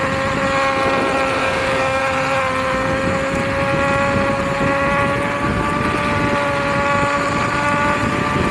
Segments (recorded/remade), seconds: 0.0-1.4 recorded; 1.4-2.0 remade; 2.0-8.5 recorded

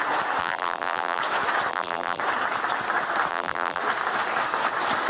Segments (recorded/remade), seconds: 0.0-0.4 recorded; 0.4-1.2 remade; 1.2-1.7 recorded; 1.7-2.2 remade; 2.2-3.3 recorded; 3.3-3.8 remade; 3.8-5.1 recorded

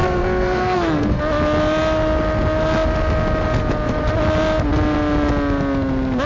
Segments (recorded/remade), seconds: 0.0-1.2 remade; 1.2-6.3 recorded

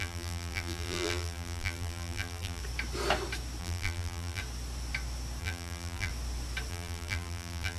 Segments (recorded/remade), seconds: 0.0-2.6 remade; 2.6-3.6 recorded; 3.6-4.4 remade; 4.4-5.4 recorded; 5.4-6.1 remade; 6.1-6.7 recorded; 6.7-7.8 remade

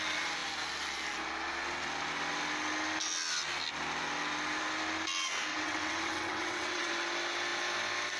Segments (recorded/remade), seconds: 0.0-5.5 recorded; 5.5-6.9 remade; 6.9-8.2 recorded